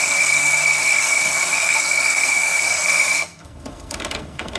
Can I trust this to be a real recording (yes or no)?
no